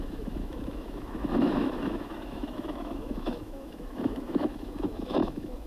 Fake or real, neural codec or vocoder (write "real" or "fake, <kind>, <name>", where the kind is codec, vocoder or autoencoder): fake, autoencoder, DAC-VAE